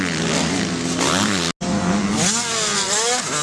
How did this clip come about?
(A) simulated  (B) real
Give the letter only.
B